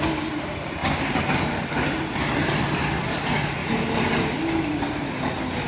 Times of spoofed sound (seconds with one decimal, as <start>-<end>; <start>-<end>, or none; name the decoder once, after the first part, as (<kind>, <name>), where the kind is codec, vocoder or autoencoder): 0.8-1.7 (vocoder, BigVGAN v2); 3.6-5.3